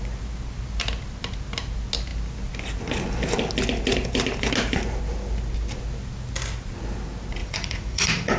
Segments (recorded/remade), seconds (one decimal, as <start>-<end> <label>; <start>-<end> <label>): 0.0-7.4 recorded; 7.4-8.4 remade